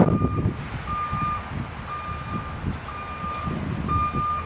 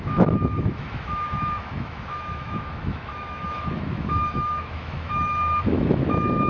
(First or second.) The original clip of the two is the first